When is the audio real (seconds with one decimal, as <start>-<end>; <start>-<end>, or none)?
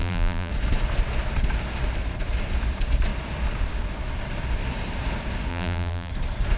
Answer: 0.5-5.5; 6.1-6.6